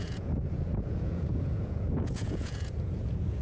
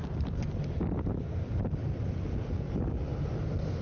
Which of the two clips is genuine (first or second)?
second